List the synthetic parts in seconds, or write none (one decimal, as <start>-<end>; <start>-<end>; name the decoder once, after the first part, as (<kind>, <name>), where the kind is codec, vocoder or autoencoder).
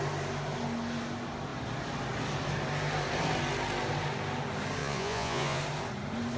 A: 4.8-5.6 (vocoder, Vocos)